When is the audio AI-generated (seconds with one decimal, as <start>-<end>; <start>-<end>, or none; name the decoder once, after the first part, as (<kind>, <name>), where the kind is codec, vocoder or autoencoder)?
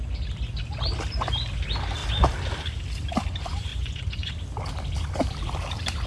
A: 3.7-4.3 (vocoder, Vocos)